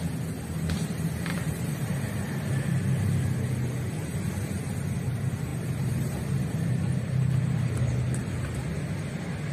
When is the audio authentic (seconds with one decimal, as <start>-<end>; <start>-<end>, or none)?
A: 0.0-1.3; 2.5-5.5; 7.8-9.5